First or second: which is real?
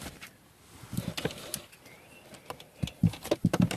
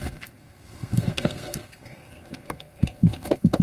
first